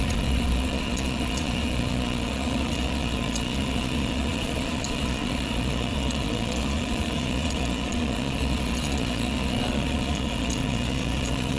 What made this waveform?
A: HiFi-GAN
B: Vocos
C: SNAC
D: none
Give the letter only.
B